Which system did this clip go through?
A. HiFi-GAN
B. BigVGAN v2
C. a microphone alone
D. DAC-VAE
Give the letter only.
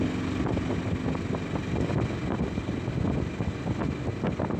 C